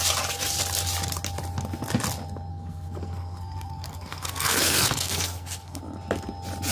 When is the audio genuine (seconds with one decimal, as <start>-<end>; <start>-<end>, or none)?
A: 0.0-2.5; 5.8-6.7